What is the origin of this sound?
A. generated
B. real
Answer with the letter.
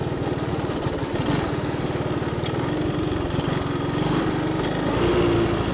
B